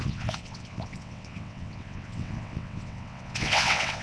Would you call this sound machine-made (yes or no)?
yes